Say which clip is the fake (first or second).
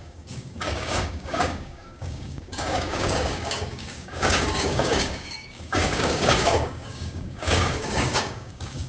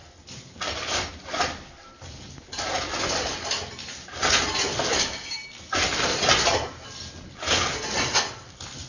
first